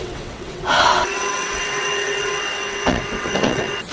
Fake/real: fake